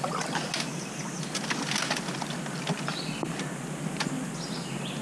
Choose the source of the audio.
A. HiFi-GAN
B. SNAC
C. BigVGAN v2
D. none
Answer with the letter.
D